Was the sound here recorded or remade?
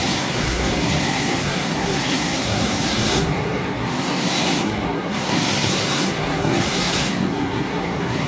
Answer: remade